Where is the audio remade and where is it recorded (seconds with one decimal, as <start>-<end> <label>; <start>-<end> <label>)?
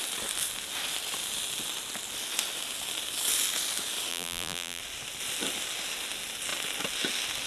0.0-4.1 recorded; 4.1-4.8 remade; 4.8-7.5 recorded